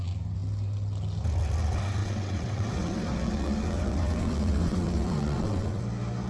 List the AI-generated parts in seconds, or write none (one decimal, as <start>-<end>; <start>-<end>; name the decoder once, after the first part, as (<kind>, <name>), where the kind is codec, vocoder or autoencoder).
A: 2.0-5.8 (vocoder, WaveNeXt)